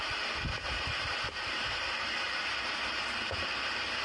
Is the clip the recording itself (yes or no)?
yes